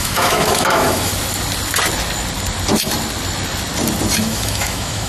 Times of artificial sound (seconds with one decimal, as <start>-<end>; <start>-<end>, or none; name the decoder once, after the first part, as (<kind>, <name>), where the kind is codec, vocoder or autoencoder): 0.0-1.1 (autoencoder, DAC-VAE); 4.2-5.1